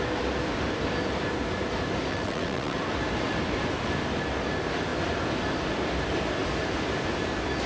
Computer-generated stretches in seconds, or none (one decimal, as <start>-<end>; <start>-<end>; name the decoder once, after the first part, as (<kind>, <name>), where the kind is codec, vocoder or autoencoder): 2.1-2.8 (vocoder, WaveNeXt)